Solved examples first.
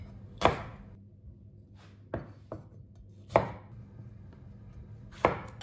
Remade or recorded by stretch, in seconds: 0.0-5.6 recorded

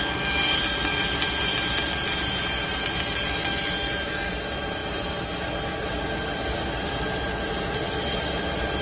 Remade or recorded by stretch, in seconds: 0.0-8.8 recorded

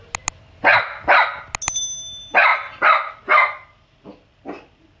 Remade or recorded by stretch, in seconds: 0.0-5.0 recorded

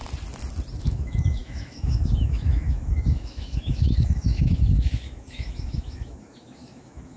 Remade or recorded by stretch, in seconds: 0.0-0.8 recorded; 0.8-7.2 remade

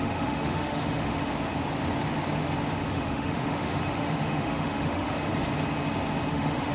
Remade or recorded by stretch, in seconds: 0.0-1.3 remade; 1.3-2.9 recorded; 2.9-5.3 remade; 5.3-6.3 recorded; 6.3-6.7 remade

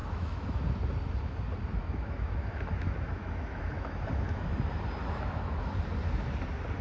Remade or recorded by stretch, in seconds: 0.0-0.6 remade; 0.6-1.7 recorded; 1.7-4.5 remade; 4.5-5.0 recorded; 5.0-5.7 remade; 5.7-6.8 recorded

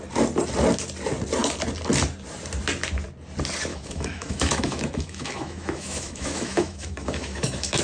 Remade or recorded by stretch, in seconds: 0.0-3.7 recorded; 3.7-7.8 remade